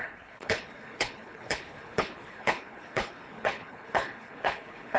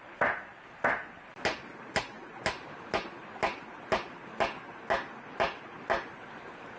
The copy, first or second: first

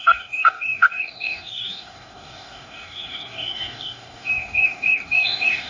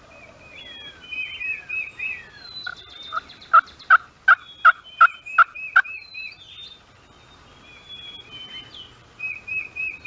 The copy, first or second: first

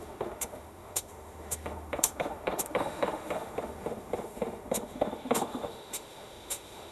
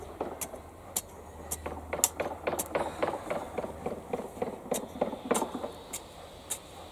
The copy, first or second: first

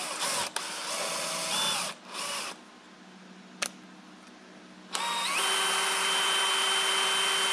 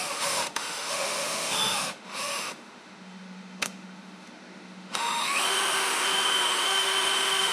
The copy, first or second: second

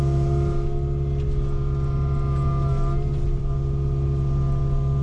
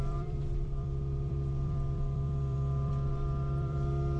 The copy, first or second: second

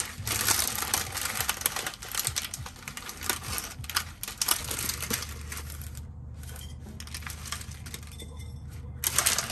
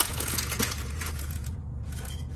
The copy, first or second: second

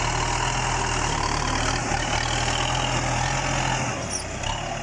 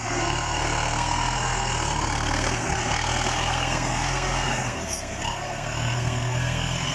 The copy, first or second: second